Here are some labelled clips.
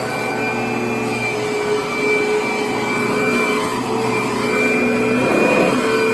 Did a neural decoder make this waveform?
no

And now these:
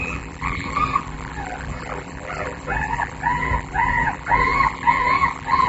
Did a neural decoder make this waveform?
yes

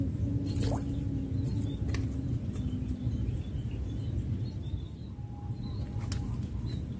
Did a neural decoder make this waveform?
no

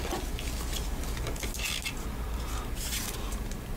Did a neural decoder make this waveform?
no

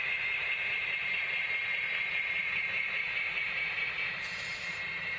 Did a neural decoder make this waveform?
yes